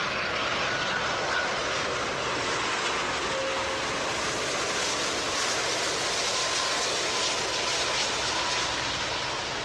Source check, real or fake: real